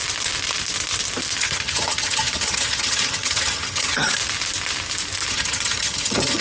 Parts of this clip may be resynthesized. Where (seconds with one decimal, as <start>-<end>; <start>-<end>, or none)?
1.4-4.2; 5.3-6.4